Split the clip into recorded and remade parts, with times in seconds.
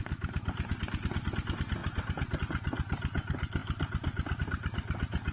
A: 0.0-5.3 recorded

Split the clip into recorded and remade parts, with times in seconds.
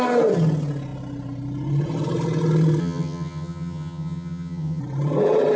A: 0.0-2.8 recorded; 2.8-4.8 remade; 4.8-5.6 recorded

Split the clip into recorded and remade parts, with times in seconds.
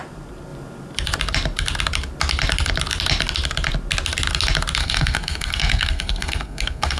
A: 0.0-4.8 recorded; 4.8-7.0 remade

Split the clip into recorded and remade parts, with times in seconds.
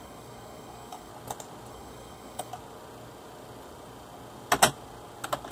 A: 0.0-1.1 remade; 1.1-1.7 recorded; 1.7-2.5 remade; 2.5-5.5 recorded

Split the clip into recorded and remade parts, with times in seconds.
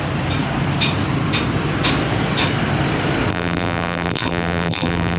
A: 0.0-3.3 recorded; 3.3-5.2 remade